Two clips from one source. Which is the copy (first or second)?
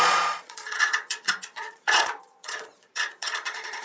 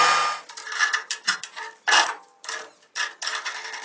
first